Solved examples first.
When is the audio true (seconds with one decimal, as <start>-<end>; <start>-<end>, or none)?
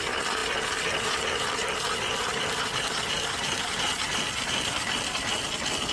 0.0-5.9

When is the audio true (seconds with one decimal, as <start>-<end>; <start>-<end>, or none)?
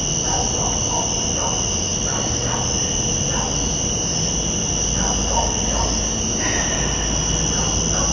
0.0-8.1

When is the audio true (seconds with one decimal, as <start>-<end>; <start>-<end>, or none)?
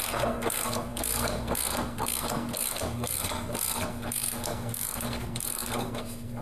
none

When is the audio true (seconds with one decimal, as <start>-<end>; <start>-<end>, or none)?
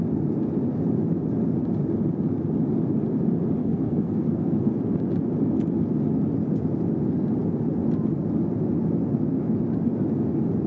0.0-3.6; 4.7-10.7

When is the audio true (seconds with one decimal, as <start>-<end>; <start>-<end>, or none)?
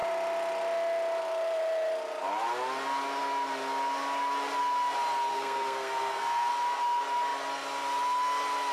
0.0-5.3; 6.5-8.7